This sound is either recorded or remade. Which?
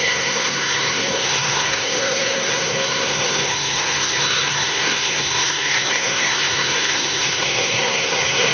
remade